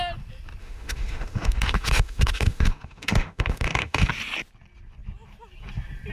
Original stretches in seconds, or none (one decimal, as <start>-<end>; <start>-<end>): 0.0-0.6; 4.1-6.1

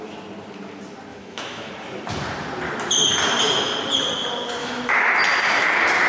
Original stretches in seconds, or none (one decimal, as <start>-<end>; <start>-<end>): 0.0-1.1; 1.7-4.6; 5.2-6.1

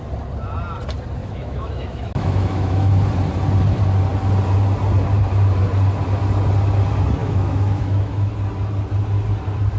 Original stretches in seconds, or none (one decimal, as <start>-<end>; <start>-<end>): 0.0-1.2; 2.9-7.2; 8.3-9.8